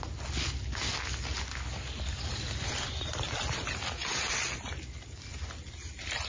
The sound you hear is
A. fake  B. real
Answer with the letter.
B